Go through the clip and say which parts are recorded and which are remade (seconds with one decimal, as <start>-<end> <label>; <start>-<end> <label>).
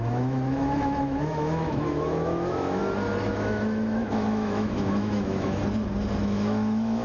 0.0-2.8 remade; 2.8-3.3 recorded; 3.3-5.6 remade; 5.6-6.2 recorded; 6.2-7.0 remade